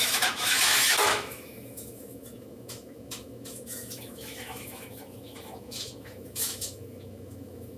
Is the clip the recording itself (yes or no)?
no